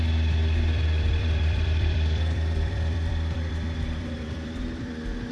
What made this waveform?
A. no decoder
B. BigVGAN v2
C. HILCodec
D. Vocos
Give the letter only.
B